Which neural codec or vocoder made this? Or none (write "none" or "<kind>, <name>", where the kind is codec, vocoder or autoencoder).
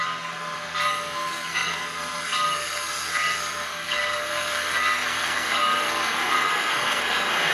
codec, SNAC